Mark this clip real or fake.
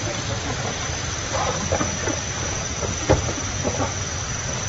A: real